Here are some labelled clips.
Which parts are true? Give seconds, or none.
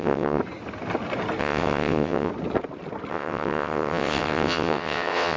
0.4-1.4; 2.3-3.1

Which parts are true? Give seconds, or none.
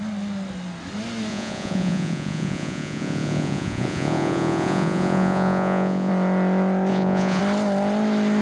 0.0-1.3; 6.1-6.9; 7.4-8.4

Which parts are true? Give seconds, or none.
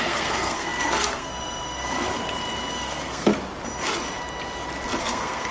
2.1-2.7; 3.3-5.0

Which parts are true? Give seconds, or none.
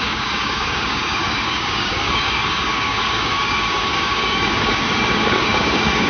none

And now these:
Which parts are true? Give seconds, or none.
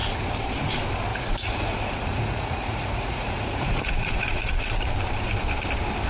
0.0-1.1; 4.8-6.1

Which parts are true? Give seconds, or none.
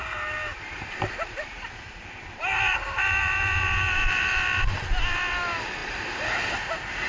0.0-0.5; 4.6-5.8; 6.5-7.1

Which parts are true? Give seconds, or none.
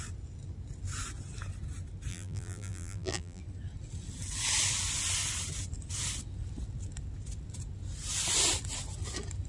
0.0-2.1; 3.4-9.5